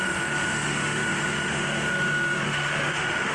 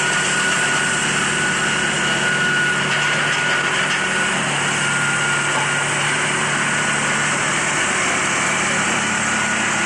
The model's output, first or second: first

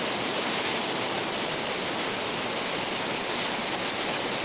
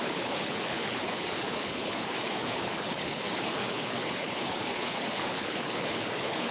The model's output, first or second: second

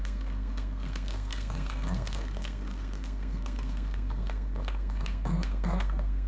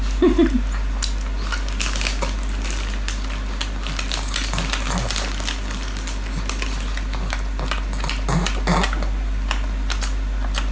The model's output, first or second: first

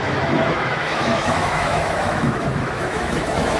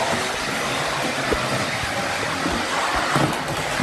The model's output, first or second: first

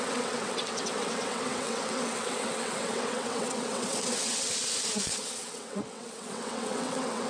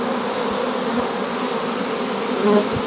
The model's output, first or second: first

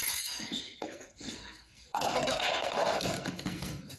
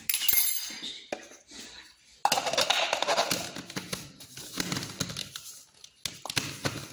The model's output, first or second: first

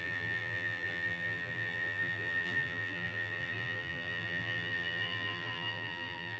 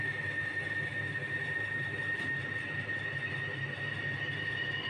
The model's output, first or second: first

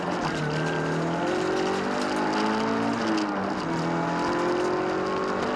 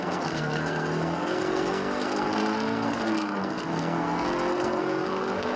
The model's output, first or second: second